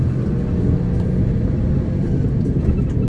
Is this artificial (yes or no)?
no